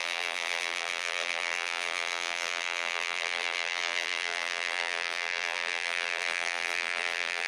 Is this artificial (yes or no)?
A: yes